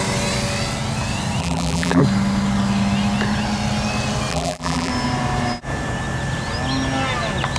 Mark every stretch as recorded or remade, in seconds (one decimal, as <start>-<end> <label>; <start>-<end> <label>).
0.0-1.4 recorded; 1.4-2.0 remade; 2.0-4.3 recorded; 4.3-4.9 remade; 4.9-7.6 recorded